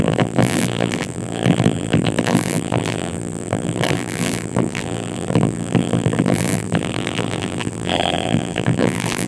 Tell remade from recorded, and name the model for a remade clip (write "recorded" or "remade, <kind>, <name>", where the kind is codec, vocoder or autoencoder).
remade, vocoder, BigVGAN v2